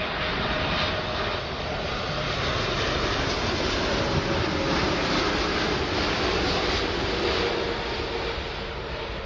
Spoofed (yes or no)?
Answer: no